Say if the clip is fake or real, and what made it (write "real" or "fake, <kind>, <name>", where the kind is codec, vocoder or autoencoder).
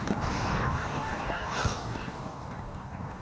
fake, codec, DAC